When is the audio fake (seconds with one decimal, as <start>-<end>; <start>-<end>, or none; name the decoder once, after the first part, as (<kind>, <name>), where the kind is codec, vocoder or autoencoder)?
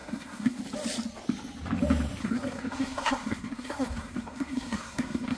0.0-0.6 (codec, SNAC); 2.2-5.4